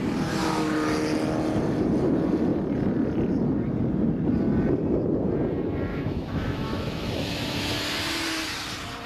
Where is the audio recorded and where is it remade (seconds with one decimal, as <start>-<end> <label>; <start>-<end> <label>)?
0.0-5.9 recorded; 5.9-7.7 remade; 7.7-9.1 recorded

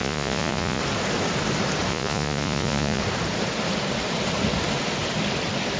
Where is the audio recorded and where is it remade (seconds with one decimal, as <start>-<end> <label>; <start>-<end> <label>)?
0.0-0.8 remade; 0.8-1.9 recorded; 1.9-3.0 remade; 3.0-5.8 recorded

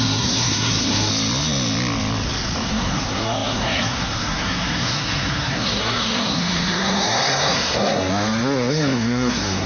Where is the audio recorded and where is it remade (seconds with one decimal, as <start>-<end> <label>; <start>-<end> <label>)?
0.0-1.1 remade; 1.1-2.7 recorded; 2.7-8.1 remade; 8.1-8.7 recorded; 8.7-9.7 remade